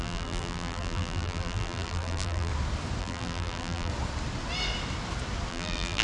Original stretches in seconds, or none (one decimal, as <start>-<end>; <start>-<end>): 2.5-3.0; 3.9-5.5